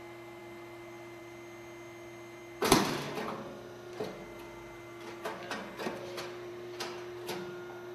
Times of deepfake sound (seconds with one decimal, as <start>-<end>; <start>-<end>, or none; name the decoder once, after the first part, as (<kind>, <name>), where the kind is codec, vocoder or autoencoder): none